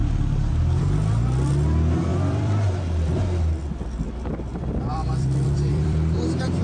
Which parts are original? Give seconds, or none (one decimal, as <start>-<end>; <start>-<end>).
0.5-2.1; 2.8-4.5